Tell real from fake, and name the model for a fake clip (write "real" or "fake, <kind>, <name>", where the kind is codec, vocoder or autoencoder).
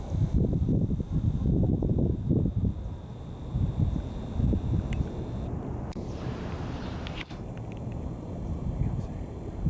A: fake, vocoder, BigVGAN v2